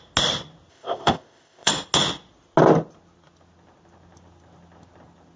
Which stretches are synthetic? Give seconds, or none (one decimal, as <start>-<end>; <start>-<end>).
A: 0.7-1.7